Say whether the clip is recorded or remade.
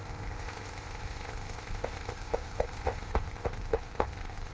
remade